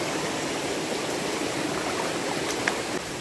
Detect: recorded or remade recorded